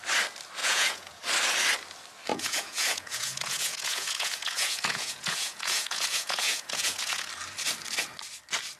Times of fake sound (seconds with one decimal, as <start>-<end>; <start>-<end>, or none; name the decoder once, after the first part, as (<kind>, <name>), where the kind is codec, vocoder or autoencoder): 0.6-1.2 (vocoder, Vocos); 2.3-7.3